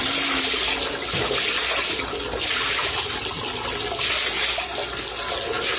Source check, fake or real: real